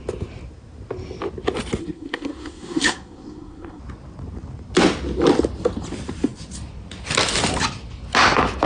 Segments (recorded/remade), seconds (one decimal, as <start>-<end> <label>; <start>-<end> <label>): 0.0-1.8 recorded; 1.8-3.8 remade; 3.8-8.7 recorded